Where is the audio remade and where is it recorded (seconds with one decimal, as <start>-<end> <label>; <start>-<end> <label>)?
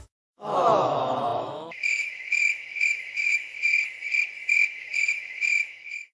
0.0-3.7 remade; 3.7-4.5 recorded; 4.5-6.1 remade